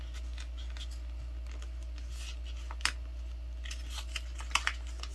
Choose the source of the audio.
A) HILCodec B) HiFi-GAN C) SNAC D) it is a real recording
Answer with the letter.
D